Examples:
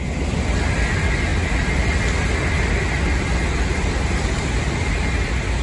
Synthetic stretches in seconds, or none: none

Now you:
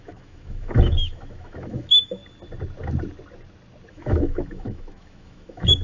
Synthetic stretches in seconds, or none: 0.0-2.2 (autoencoder, DAC-VAE); 3.9-5.8